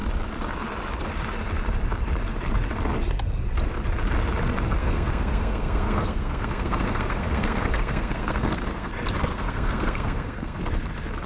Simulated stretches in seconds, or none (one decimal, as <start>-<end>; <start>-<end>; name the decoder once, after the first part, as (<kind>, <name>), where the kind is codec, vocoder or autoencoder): 4.8-8.9 (codec, SNAC); 9.3-10.6